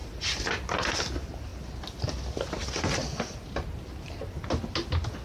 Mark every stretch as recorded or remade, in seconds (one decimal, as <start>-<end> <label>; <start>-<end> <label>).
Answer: 0.0-5.2 recorded